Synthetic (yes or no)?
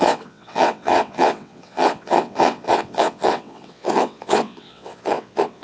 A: yes